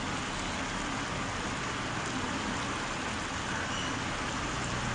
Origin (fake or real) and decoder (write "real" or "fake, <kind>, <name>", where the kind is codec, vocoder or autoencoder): real